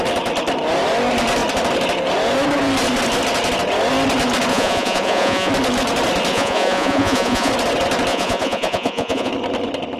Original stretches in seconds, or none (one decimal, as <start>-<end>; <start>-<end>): 0.0-4.5; 5.5-6.3; 7.5-8.1; 9.3-10.0